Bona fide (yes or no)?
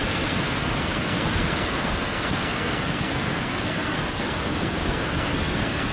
no